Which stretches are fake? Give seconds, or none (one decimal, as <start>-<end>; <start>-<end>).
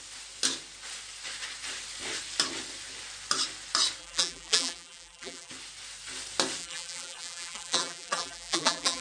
4.0-5.5; 6.6-9.0